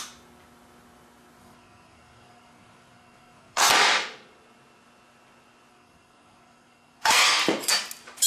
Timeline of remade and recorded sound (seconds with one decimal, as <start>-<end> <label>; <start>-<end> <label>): 0.0-1.4 recorded; 1.4-3.7 remade; 3.7-5.7 recorded; 5.7-7.4 remade; 7.4-8.3 recorded